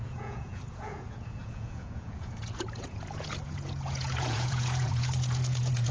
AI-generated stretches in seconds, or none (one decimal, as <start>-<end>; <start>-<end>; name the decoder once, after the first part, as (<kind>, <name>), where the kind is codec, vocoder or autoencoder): 0.0-5.9 (vocoder, Vocos)